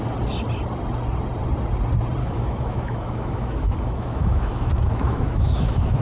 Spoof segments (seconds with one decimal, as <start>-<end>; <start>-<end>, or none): 2.2-6.0